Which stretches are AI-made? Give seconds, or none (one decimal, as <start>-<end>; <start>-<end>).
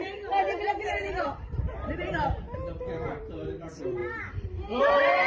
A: 0.0-5.3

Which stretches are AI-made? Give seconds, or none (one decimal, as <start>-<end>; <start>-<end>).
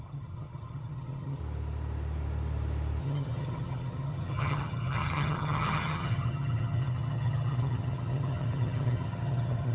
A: 0.0-1.4; 3.0-9.7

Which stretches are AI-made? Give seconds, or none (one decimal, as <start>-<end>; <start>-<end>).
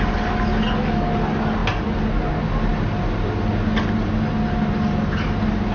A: none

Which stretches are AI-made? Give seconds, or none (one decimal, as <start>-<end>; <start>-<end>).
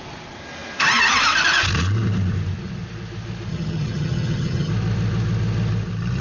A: 3.5-4.7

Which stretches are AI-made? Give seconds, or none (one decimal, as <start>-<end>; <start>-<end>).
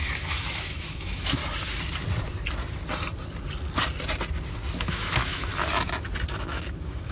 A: 0.0-1.4; 4.9-5.5; 6.4-7.1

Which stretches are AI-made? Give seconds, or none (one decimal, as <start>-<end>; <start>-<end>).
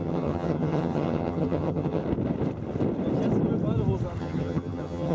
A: 0.0-2.0; 4.2-5.1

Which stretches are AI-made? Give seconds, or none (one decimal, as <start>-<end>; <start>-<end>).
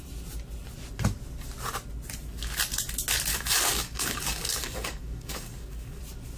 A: 3.3-6.0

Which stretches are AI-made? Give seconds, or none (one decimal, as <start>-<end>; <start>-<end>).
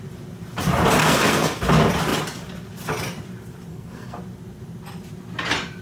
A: 1.0-1.6; 3.7-4.2